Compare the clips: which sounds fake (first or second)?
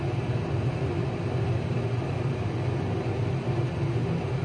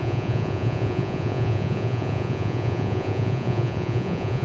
second